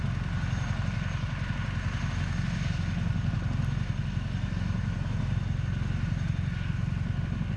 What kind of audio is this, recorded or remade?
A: recorded